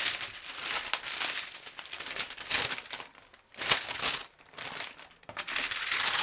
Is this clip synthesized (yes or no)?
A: no